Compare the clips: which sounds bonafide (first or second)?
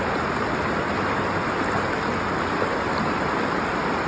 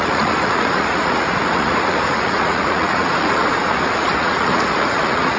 first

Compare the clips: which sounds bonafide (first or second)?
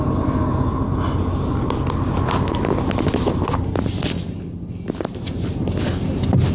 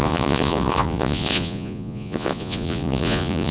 first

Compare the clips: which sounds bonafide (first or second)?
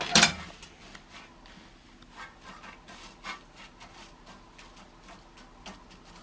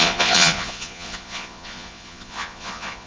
first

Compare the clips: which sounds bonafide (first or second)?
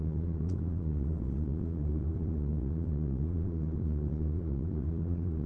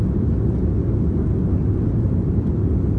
second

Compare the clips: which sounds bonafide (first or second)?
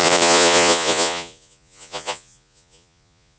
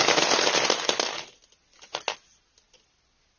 second